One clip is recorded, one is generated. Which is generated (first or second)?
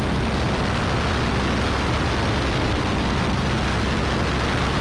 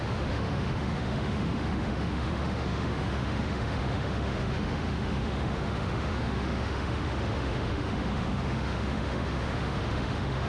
second